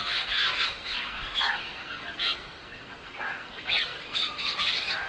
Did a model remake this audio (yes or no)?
yes